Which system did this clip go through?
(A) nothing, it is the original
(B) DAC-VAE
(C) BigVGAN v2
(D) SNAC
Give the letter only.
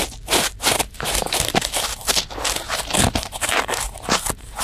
C